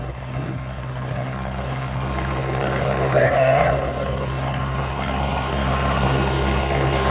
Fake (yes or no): yes